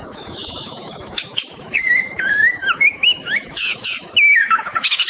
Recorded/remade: remade